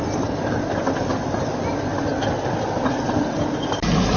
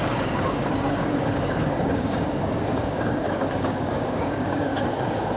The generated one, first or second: second